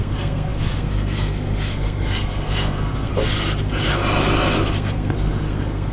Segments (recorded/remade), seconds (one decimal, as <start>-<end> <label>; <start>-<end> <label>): 0.0-3.1 remade; 3.1-4.6 recorded; 4.6-5.9 remade